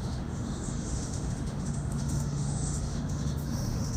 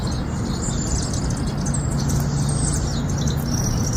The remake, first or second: first